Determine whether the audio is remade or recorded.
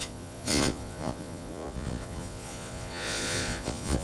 remade